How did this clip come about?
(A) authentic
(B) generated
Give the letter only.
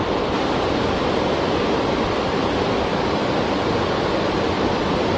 A